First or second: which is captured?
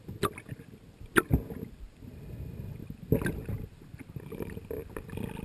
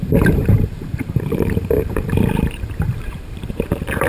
first